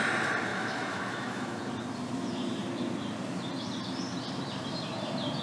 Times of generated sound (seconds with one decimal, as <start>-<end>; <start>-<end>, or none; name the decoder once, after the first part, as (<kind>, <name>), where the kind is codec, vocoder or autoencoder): 0.5-1.6 (autoencoder, DAC-VAE)